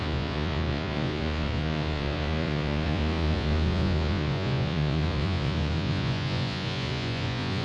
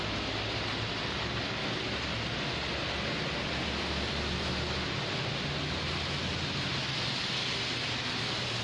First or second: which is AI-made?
first